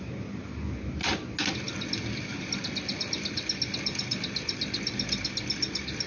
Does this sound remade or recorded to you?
recorded